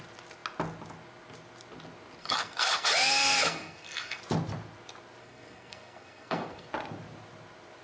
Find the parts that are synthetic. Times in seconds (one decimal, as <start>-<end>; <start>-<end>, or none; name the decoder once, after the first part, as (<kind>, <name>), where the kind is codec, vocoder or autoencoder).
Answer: 2.2-4.2 (codec, SNAC); 5.2-6.7